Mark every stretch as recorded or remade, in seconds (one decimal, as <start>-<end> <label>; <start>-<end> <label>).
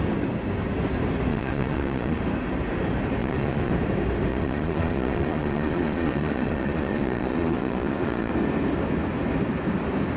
0.0-1.3 recorded; 1.3-2.2 remade; 2.2-3.2 recorded; 3.2-3.7 remade; 3.7-4.3 recorded; 4.3-8.3 remade; 8.3-10.2 recorded